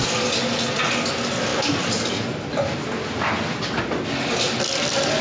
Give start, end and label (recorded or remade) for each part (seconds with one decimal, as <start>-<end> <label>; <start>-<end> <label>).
0.0-5.2 recorded